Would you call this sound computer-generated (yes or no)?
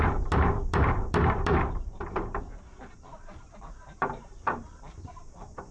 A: yes